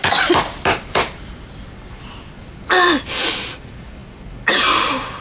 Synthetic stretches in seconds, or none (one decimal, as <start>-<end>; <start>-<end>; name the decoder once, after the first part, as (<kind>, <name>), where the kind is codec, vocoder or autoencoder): 0.0-3.1 (vocoder, BigVGAN v2)